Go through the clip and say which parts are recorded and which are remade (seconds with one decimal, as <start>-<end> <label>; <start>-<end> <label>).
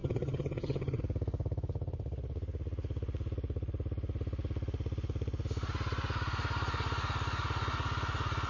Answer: 0.0-1.0 remade; 1.0-8.5 recorded